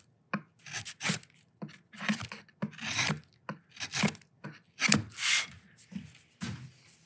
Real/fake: real